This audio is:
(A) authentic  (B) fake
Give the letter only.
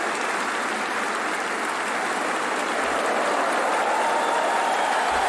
A